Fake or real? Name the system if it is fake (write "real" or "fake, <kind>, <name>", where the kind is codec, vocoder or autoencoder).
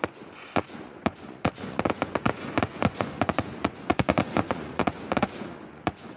fake, vocoder, Vocos